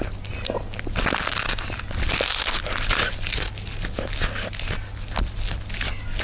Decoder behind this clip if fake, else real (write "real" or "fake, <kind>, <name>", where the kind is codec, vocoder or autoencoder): real